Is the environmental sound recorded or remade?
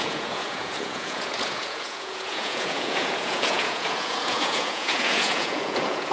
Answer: remade